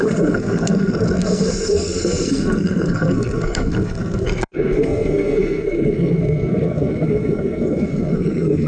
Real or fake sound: fake